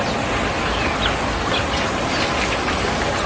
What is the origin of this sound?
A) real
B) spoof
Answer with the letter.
A